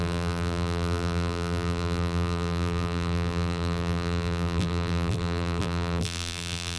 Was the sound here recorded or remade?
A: remade